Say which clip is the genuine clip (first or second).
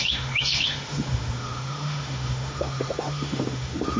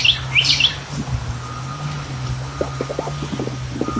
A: second